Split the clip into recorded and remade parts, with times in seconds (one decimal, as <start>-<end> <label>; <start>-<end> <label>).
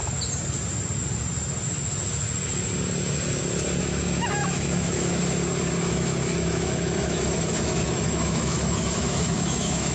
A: 0.0-3.8 recorded; 3.8-5.2 remade; 5.2-5.8 recorded; 5.8-9.9 remade